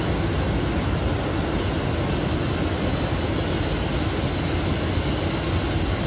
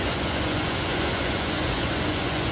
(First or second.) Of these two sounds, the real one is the first